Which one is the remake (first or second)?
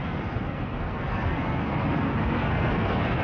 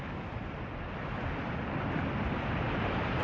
first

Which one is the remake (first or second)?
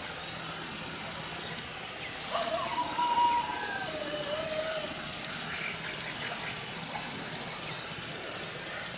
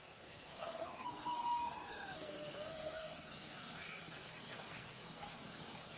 second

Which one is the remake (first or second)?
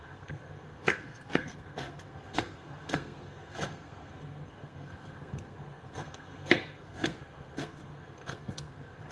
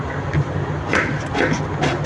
first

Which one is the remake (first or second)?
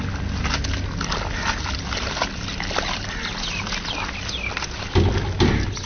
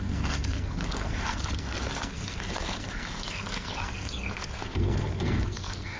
second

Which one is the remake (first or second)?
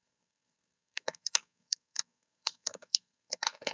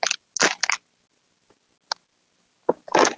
first